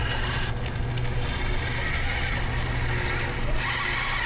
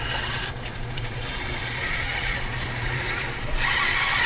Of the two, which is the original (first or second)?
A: first